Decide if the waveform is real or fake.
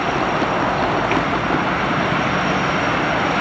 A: real